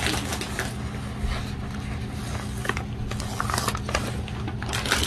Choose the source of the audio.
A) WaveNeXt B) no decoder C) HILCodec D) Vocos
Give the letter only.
B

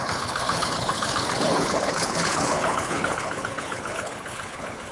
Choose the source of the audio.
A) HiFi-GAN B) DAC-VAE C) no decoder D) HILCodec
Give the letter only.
D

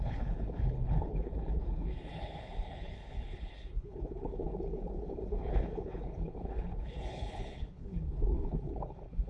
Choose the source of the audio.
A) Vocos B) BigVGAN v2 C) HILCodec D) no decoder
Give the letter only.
C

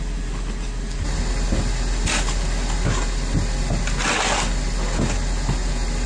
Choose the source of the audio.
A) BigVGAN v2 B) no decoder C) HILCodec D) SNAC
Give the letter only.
B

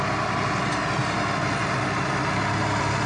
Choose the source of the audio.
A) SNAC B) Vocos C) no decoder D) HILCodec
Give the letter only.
C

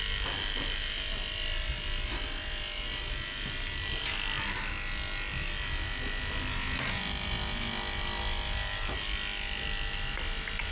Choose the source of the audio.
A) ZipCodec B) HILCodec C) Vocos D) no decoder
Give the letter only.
D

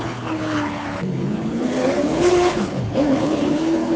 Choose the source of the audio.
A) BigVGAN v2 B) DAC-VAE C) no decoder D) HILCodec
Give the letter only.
D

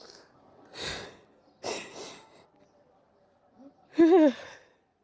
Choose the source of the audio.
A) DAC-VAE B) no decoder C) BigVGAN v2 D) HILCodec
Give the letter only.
B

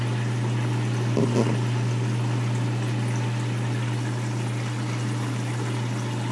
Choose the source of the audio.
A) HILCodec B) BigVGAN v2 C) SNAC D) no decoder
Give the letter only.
D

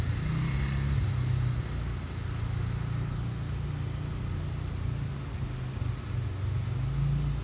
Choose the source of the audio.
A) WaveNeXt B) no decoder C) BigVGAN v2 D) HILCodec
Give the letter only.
B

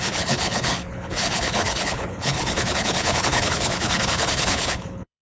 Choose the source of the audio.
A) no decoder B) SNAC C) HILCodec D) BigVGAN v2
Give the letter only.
C